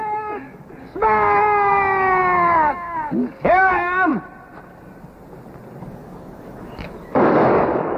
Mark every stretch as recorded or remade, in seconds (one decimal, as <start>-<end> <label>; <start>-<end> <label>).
0.0-4.1 remade; 4.1-5.8 recorded; 5.8-8.0 remade